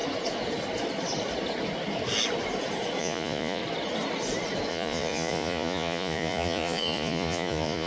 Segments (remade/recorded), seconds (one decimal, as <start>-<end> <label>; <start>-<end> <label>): 0.0-3.0 recorded; 3.0-3.6 remade; 3.6-4.7 recorded; 4.7-7.9 remade